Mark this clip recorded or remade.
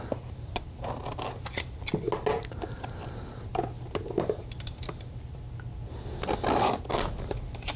recorded